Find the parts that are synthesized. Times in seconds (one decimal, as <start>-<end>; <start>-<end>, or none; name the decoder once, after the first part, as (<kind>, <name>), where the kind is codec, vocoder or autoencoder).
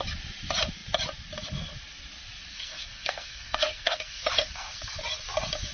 2.5-5.0 (codec, SNAC)